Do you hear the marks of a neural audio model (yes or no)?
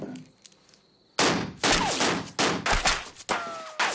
no